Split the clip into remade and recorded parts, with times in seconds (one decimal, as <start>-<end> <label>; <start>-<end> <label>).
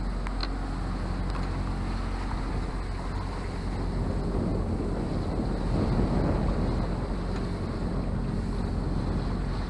0.0-9.7 recorded